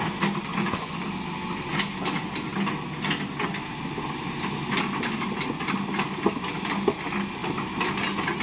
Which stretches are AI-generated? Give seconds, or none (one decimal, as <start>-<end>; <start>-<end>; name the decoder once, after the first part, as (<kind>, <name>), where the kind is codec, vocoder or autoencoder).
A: 0.5-1.0 (vocoder, Vocos)